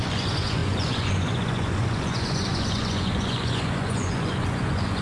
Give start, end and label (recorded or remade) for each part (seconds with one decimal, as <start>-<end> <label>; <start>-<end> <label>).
0.0-5.0 remade